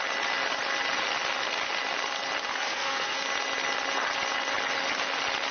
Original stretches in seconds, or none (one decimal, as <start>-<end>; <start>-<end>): 0.0-2.5; 3.2-5.5

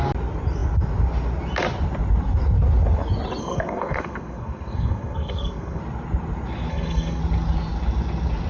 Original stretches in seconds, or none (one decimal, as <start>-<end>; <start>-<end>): 0.0-3.4; 5.8-6.7; 7.2-8.5

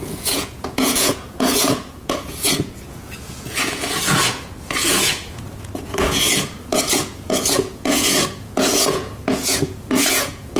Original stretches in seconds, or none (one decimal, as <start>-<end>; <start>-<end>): none

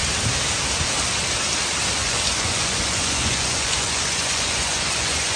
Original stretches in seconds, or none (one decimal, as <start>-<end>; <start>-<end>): 0.0-2.0

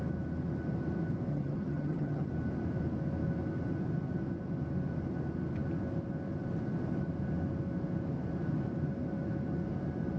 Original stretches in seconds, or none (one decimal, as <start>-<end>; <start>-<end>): 0.0-1.3; 2.3-10.2

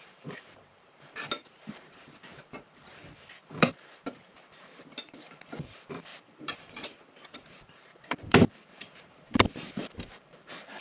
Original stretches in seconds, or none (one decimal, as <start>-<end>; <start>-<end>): none

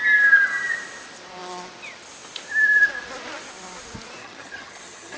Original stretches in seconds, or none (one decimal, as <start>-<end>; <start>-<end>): 0.0-4.2

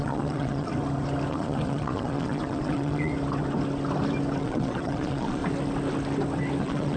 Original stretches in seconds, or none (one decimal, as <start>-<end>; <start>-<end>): 0.7-1.3; 3.1-4.4; 5.4-6.6